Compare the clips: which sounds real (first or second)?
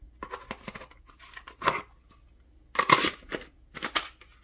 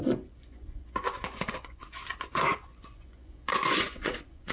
first